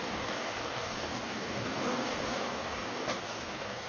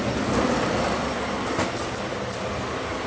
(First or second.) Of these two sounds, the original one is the second